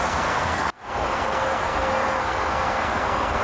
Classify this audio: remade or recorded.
remade